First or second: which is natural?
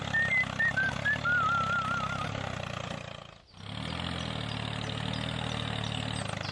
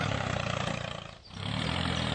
first